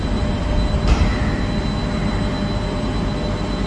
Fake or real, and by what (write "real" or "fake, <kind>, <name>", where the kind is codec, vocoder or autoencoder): real